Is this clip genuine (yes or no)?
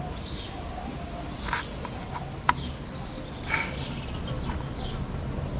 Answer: yes